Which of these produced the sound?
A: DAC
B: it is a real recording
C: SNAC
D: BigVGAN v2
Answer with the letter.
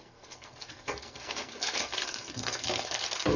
C